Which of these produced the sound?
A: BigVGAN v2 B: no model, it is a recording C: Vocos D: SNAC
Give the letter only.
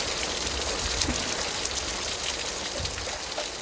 B